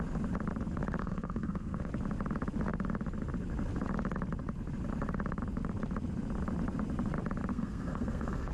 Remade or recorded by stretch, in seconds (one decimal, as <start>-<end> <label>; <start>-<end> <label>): 0.0-1.0 recorded; 1.0-1.9 remade; 1.9-7.5 recorded; 7.5-8.5 remade